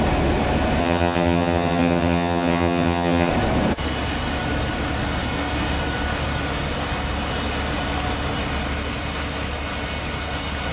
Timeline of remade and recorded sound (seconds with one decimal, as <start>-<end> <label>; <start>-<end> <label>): 0.0-0.8 recorded; 0.8-3.3 remade; 3.3-10.7 recorded